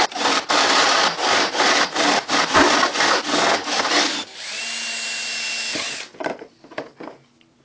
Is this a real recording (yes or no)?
yes